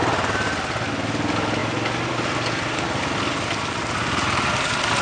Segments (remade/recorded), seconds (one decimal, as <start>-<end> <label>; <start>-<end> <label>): 0.0-5.0 recorded